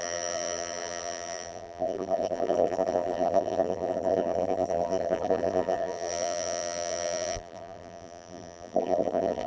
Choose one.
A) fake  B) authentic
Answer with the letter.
A